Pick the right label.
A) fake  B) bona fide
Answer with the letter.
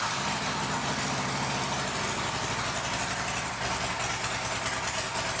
B